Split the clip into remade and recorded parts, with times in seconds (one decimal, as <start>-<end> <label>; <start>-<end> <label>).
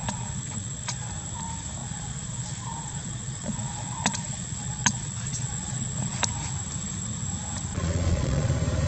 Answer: 0.0-1.1 remade; 1.1-1.8 recorded; 1.8-6.2 remade; 6.2-7.7 recorded; 7.7-8.5 remade; 8.5-8.9 recorded